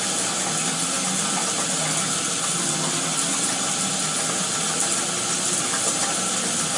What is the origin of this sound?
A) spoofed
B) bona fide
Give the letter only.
B